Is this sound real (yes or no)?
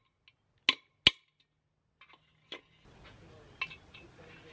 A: yes